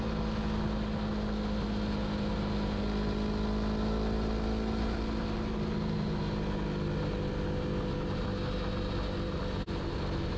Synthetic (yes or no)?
no